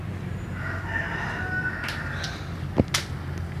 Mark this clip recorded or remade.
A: recorded